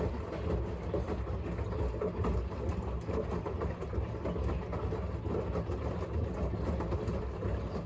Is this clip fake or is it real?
real